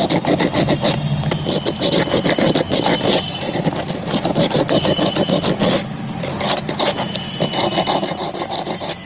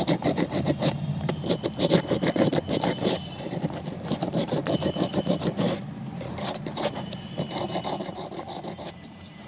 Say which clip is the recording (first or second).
first